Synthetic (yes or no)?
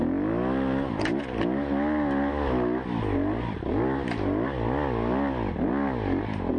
no